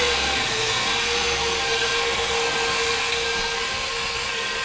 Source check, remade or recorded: remade